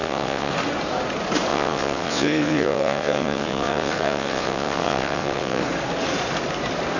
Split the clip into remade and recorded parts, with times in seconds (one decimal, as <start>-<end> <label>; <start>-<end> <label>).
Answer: 0.0-0.5 remade; 0.5-1.5 recorded; 1.5-5.6 remade; 5.6-7.0 recorded